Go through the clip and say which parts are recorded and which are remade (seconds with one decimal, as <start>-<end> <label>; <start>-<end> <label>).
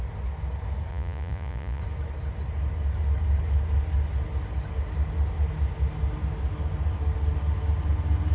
0.0-0.9 recorded; 0.9-1.8 remade; 1.8-8.3 recorded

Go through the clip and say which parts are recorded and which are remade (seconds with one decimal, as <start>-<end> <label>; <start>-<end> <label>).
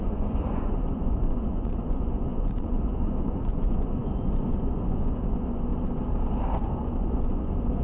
0.0-5.7 remade; 5.7-6.7 recorded; 6.7-7.8 remade